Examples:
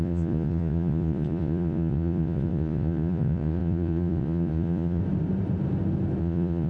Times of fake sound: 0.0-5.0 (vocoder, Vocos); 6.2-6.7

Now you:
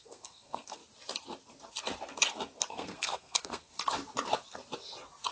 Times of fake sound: 0.0-0.8 (codec, SNAC); 2.7-3.7

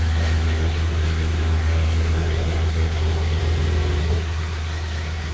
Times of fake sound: 0.0-3.4 (codec, SNAC); 4.0-5.3

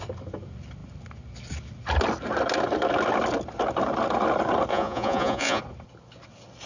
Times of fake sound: 4.7-5.6 (vocoder, Vocos)

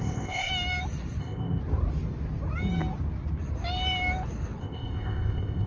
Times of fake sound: 0.0-0.5 (codec, ZipCodec); 1.2-1.6; 4.6-5.7

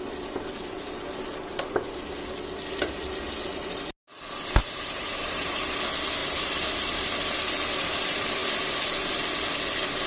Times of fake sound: 4.6-5.8 (vocoder, BigVGAN v2); 6.2-7.4

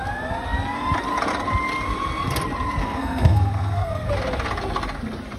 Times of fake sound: 2.8-4.1 (codec, SNAC)

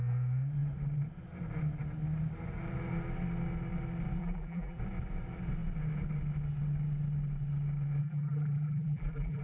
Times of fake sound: 4.2-4.8 (vocoder, BigVGAN v2); 8.0-9.4